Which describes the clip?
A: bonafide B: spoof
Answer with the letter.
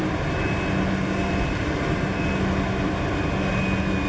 A